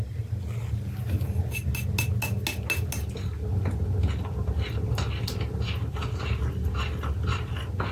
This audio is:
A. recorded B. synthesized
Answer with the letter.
A